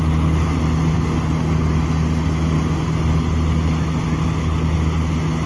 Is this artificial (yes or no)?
no